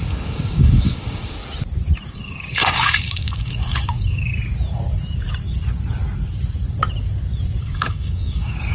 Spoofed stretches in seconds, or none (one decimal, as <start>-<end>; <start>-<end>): 0.0-1.4; 2.1-4.3; 7.6-8.7